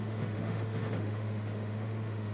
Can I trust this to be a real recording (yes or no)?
no